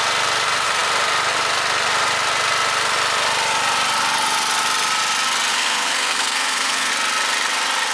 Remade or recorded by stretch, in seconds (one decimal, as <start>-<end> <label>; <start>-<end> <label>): 0.0-5.5 recorded; 5.5-6.9 remade; 6.9-7.9 recorded